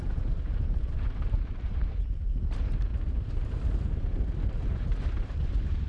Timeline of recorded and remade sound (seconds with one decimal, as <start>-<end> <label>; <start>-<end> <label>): 0.0-5.9 remade